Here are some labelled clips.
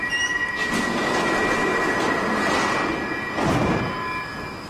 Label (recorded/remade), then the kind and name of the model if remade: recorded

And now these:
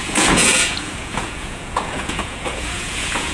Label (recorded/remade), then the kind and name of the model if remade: remade, vocoder, Vocos